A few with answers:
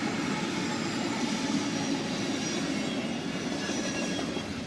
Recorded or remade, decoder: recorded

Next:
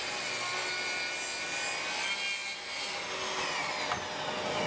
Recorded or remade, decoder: recorded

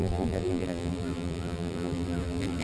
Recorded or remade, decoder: remade, vocoder, BigVGAN v2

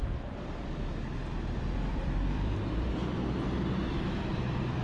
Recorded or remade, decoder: remade, vocoder, BigVGAN v2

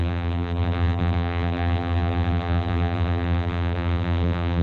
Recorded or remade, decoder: remade, vocoder, BigVGAN v2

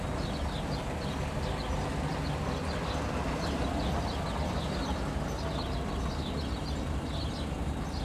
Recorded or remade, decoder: recorded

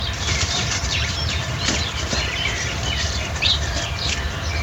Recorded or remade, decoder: remade, vocoder, BigVGAN v2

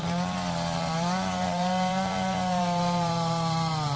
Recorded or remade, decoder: remade, vocoder, BigVGAN v2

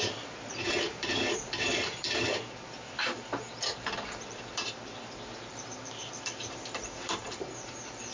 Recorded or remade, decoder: remade, vocoder, BigVGAN v2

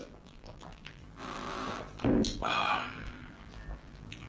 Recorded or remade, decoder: remade, vocoder, BigVGAN v2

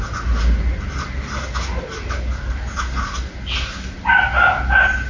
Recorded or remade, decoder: recorded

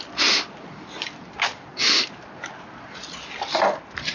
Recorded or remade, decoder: recorded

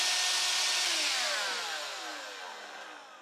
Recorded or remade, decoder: recorded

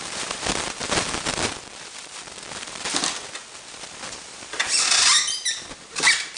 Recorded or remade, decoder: remade, vocoder, BigVGAN v2